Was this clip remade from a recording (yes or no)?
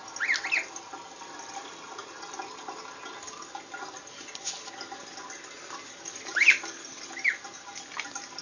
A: no